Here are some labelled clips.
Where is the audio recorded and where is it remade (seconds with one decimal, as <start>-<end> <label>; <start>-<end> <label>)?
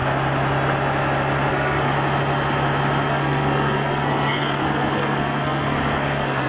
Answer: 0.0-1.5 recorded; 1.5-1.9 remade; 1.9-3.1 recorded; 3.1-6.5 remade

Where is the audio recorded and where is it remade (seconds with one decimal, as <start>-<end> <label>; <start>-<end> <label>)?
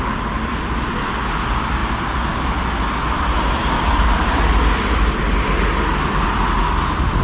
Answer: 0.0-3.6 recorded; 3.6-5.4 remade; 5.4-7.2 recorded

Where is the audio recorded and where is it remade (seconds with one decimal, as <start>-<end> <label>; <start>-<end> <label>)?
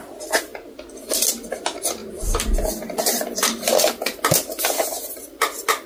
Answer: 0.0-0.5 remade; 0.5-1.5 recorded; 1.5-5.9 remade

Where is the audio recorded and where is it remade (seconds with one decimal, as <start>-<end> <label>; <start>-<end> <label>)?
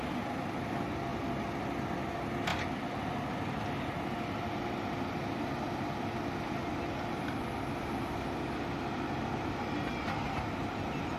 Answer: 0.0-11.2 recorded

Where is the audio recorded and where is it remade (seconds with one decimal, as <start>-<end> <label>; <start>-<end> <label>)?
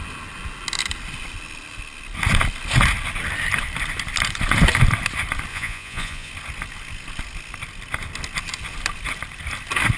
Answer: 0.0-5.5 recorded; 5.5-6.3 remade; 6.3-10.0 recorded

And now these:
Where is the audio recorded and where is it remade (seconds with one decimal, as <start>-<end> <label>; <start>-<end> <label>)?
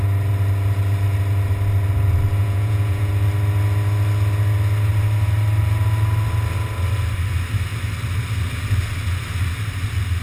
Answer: 0.0-2.4 recorded; 2.4-3.1 remade; 3.1-10.2 recorded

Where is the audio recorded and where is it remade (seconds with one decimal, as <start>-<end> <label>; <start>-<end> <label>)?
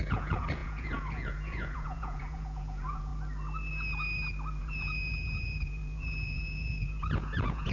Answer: 0.0-3.1 remade; 3.1-4.6 recorded; 4.6-7.7 remade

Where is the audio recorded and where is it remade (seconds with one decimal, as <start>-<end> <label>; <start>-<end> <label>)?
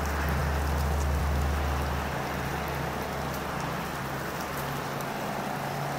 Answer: 0.0-6.0 recorded